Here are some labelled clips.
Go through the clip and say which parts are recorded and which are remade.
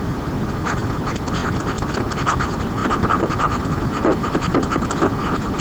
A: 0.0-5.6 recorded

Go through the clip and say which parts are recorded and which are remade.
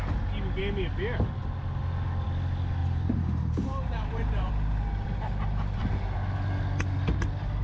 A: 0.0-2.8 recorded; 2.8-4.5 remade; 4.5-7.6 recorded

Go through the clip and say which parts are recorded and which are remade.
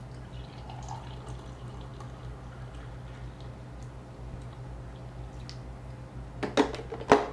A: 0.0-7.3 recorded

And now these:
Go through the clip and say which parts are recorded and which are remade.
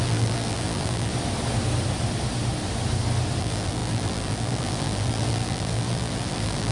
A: 0.0-1.1 remade; 1.1-3.4 recorded; 3.4-6.7 remade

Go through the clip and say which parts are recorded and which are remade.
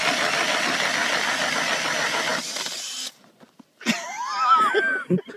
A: 0.0-5.4 recorded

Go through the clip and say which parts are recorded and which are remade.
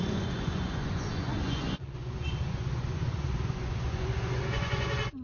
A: 0.0-5.2 remade